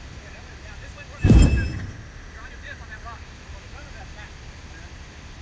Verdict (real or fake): fake